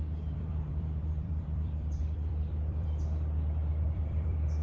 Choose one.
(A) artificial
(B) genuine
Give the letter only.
A